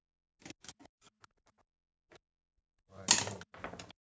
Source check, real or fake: real